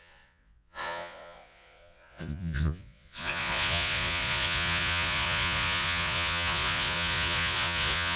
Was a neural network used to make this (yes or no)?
yes